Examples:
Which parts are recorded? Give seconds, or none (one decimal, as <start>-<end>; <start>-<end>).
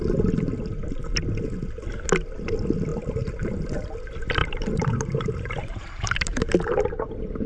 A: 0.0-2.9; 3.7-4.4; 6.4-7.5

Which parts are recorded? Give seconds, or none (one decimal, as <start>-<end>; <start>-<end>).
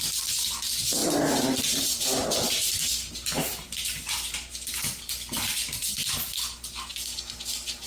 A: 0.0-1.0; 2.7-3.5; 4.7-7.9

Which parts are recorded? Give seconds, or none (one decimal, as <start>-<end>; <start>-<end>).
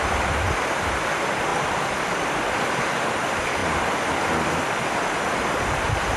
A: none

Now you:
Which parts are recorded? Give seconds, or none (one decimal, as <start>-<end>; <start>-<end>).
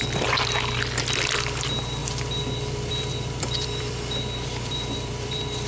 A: 0.0-2.0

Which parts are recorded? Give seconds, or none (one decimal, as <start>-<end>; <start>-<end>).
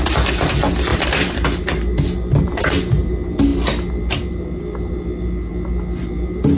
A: 0.0-6.6